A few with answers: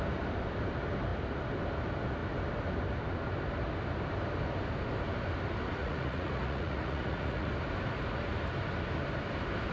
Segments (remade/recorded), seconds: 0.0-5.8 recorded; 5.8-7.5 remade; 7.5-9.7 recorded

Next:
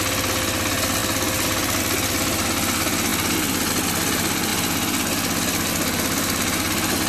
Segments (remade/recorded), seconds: 0.0-7.1 recorded

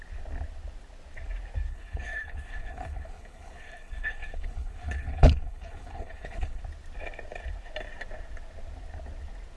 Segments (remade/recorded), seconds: 0.0-1.7 recorded; 1.7-6.6 remade; 6.6-9.6 recorded

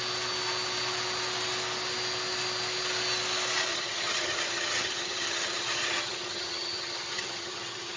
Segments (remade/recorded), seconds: 0.0-3.7 recorded; 3.7-8.0 remade

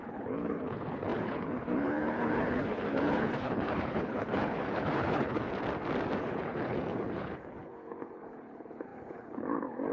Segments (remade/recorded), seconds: 0.0-5.5 remade; 5.5-6.2 recorded; 6.2-9.9 remade

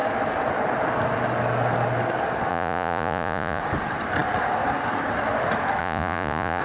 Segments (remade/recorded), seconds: 0.0-2.5 recorded; 2.5-3.6 remade; 3.6-5.8 recorded; 5.8-6.6 remade

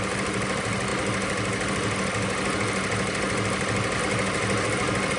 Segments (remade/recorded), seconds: 0.0-5.2 recorded

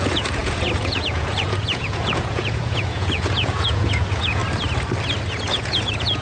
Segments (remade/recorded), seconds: 0.0-4.4 remade; 4.4-5.4 recorded; 5.4-6.2 remade